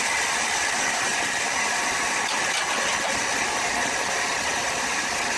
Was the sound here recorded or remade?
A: recorded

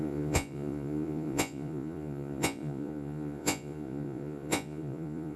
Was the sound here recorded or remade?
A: remade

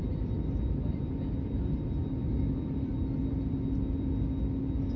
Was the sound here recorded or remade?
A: recorded